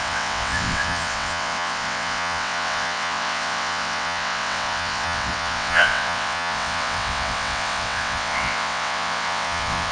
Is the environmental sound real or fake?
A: fake